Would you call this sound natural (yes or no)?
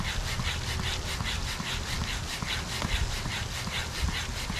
yes